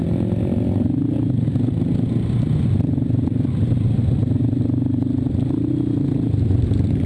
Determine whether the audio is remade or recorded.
recorded